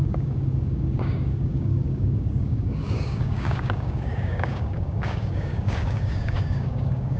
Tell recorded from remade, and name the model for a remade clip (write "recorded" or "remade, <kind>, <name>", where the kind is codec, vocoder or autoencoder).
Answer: remade, codec, DAC